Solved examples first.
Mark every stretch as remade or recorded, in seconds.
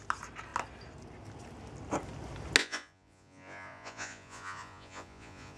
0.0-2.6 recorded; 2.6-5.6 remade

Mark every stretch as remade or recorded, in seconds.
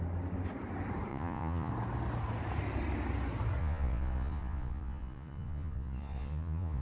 0.0-1.1 recorded; 1.1-1.7 remade; 1.7-3.6 recorded; 3.6-6.8 remade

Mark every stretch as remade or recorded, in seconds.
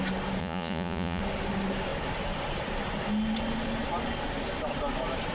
0.0-0.4 recorded; 0.4-1.2 remade; 1.2-5.3 recorded